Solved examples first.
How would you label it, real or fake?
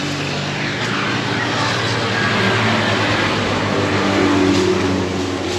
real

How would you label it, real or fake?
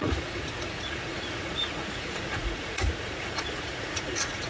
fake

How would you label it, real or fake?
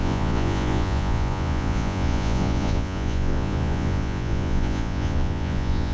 fake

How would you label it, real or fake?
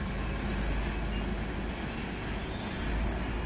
real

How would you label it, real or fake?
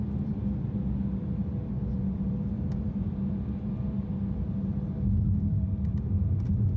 real